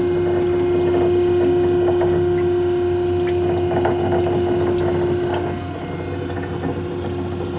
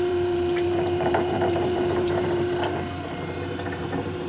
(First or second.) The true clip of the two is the first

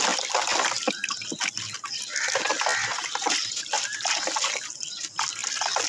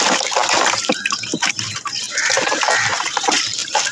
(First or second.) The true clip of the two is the first